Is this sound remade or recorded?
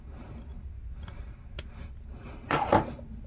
recorded